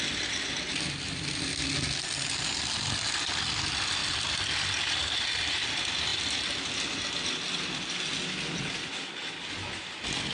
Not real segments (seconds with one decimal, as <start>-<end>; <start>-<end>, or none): none